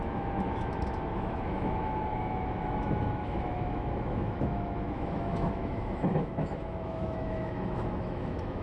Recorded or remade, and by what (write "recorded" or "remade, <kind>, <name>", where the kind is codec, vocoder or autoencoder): remade, autoencoder, DAC-VAE